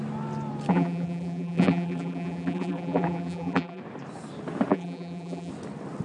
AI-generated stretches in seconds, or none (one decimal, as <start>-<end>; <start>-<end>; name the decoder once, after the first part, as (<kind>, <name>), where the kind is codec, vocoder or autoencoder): 0.7-3.8 (vocoder, BigVGAN v2); 4.7-5.5